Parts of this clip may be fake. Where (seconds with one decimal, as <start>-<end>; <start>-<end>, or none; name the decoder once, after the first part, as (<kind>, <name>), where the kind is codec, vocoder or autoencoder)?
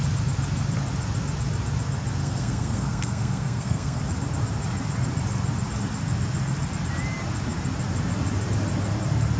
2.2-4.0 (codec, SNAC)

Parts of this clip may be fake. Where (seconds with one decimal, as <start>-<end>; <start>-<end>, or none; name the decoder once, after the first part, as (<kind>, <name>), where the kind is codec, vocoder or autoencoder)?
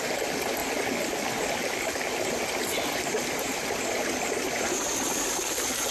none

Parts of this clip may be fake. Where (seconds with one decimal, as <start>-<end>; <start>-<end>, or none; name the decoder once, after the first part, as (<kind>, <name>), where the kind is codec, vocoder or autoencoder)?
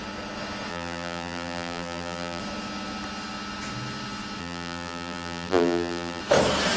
0.7-2.4 (vocoder, BigVGAN v2); 4.4-6.2